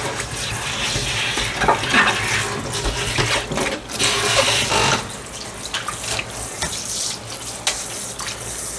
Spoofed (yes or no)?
no